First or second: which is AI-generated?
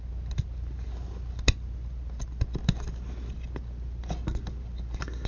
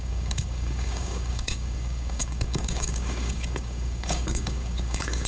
second